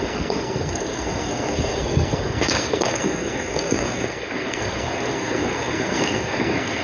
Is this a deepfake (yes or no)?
yes